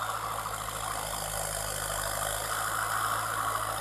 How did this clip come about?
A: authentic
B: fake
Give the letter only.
A